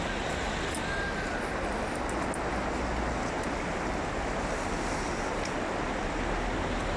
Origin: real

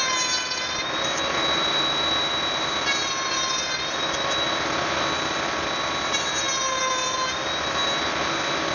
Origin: real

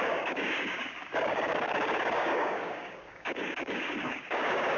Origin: fake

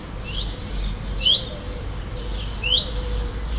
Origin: real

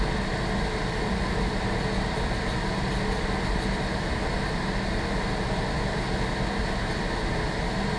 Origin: real